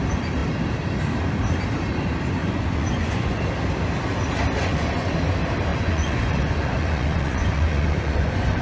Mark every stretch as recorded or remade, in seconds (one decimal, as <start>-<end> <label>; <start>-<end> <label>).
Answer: 0.0-2.4 recorded; 2.4-3.4 remade; 3.4-4.6 recorded; 4.6-5.1 remade; 5.1-5.7 recorded; 5.7-8.6 remade